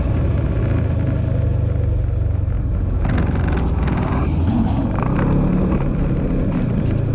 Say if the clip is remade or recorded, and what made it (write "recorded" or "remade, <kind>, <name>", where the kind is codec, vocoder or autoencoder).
recorded